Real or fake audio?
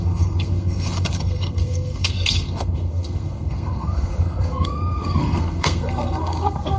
fake